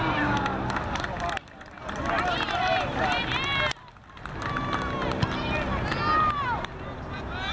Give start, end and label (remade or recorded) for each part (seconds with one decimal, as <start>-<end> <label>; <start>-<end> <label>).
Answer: 0.0-0.5 remade; 0.5-1.7 recorded; 1.7-3.2 remade; 3.2-7.5 recorded